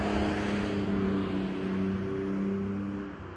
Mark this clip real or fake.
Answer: real